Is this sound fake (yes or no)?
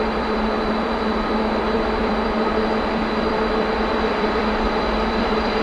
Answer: yes